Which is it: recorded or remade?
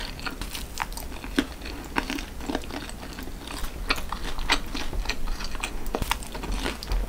recorded